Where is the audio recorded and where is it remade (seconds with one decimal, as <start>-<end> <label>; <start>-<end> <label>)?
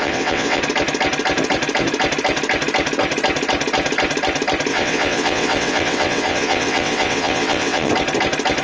0.0-0.6 remade; 0.6-4.7 recorded; 4.7-7.9 remade; 7.9-8.6 recorded